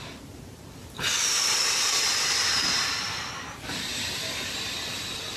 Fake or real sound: fake